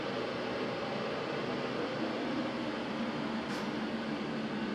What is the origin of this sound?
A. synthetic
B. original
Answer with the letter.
B